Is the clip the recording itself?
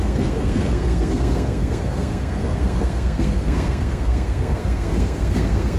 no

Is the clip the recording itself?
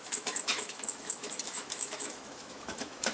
no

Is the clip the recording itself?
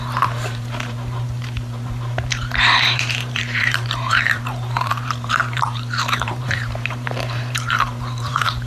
no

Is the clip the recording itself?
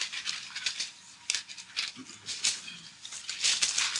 yes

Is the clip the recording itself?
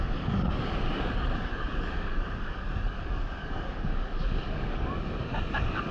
no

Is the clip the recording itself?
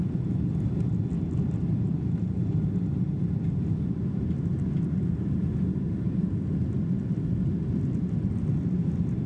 yes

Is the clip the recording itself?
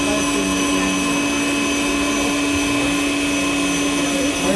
yes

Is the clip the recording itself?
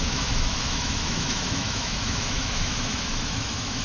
no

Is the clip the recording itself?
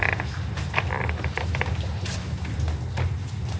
yes